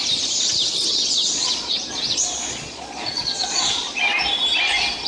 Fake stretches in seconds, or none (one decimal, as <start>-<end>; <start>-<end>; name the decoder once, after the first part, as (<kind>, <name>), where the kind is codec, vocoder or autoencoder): 0.9-4.0 (vocoder, Vocos)